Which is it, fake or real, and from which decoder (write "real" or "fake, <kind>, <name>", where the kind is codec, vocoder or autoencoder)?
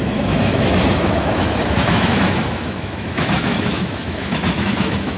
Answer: fake, autoencoder, DAC-VAE